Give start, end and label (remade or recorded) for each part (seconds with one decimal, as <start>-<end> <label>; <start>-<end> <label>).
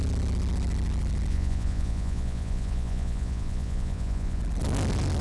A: 0.0-1.3 recorded; 1.3-4.4 remade; 4.4-5.2 recorded